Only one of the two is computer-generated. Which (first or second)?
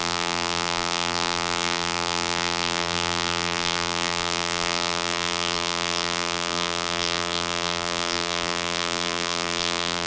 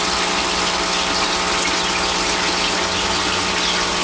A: first